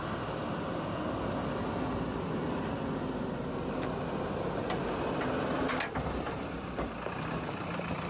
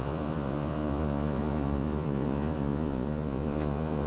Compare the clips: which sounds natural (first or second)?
first